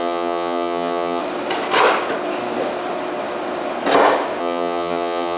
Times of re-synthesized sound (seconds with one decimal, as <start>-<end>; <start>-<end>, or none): 0.0-1.2; 4.4-5.4